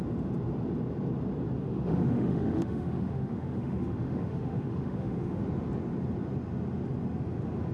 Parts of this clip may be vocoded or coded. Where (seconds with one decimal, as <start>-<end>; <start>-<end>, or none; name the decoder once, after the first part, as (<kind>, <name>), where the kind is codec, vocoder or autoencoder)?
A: 1.6-5.4 (autoencoder, DAC-VAE)